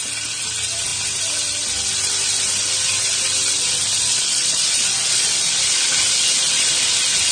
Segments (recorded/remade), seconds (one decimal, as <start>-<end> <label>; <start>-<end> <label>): 0.0-4.1 recorded; 4.1-5.5 remade; 5.5-7.3 recorded